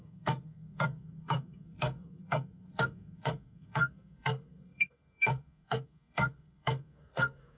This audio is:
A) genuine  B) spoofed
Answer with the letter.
B